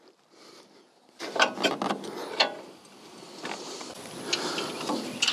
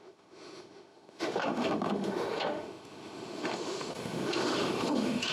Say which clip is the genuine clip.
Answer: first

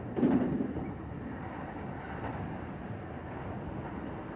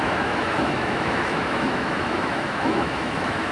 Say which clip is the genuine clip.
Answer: first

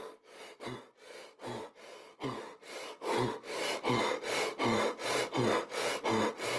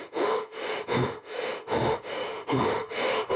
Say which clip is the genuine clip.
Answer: first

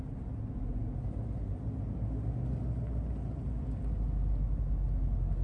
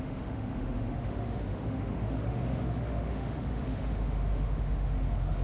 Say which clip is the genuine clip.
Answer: first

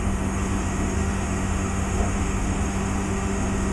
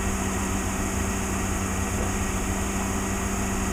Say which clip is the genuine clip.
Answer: second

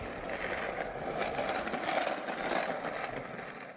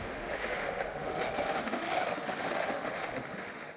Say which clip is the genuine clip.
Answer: first